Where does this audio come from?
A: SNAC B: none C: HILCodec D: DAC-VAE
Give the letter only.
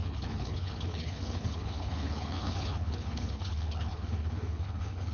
C